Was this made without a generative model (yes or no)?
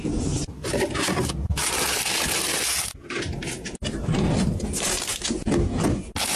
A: yes